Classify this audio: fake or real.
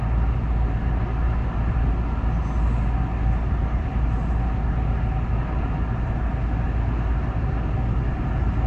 real